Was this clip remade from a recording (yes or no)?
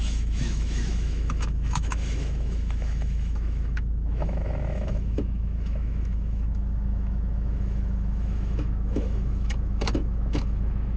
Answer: yes